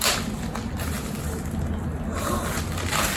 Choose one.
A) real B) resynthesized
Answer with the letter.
A